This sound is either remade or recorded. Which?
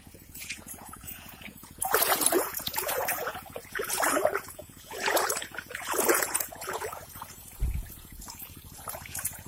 remade